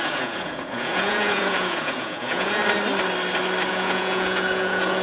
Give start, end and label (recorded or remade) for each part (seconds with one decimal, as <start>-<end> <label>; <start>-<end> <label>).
0.0-2.6 remade; 2.6-3.7 recorded; 3.7-5.0 remade